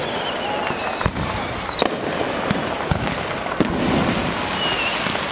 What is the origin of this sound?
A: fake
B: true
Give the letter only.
B